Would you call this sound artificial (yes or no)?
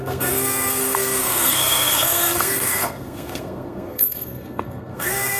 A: yes